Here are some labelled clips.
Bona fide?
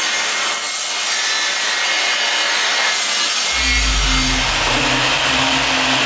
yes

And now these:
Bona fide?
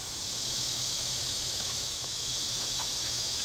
no